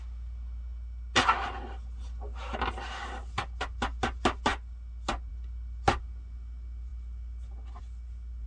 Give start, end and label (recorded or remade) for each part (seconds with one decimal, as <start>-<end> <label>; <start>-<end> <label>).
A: 0.0-8.5 recorded